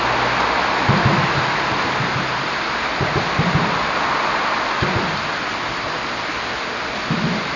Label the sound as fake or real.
real